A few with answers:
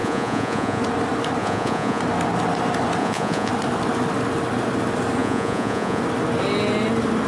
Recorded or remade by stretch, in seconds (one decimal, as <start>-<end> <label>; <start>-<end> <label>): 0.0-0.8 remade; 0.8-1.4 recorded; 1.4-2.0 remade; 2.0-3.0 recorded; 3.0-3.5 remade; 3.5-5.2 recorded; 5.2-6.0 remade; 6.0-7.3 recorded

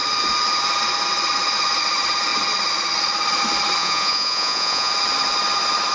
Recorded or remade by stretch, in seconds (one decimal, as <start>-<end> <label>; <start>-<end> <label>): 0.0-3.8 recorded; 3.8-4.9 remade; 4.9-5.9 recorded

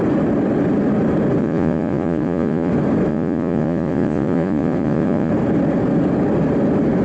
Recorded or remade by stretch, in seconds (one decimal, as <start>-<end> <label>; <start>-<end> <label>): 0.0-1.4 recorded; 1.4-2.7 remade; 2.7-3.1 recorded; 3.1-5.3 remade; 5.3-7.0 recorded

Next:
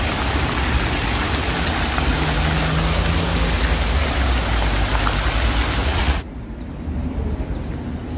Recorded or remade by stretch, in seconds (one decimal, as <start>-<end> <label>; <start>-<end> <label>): 0.0-5.8 recorded; 5.8-6.3 remade; 6.3-8.2 recorded

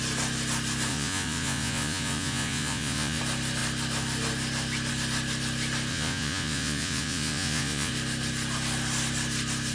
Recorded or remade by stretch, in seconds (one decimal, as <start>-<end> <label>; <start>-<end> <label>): 0.0-0.9 recorded; 0.9-3.2 remade; 3.2-5.9 recorded; 5.9-7.9 remade; 7.9-9.7 recorded

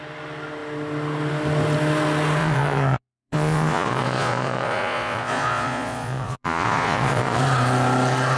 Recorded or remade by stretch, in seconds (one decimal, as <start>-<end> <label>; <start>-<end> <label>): 0.0-2.4 recorded; 2.4-7.4 remade; 7.4-8.4 recorded

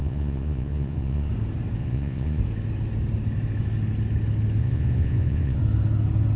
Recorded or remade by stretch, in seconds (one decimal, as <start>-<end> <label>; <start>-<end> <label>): 0.0-1.3 remade; 1.3-1.8 recorded; 1.8-2.4 remade; 2.4-4.6 recorded; 4.6-5.6 remade; 5.6-6.4 recorded